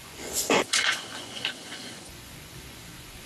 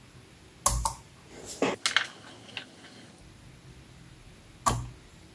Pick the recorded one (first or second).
second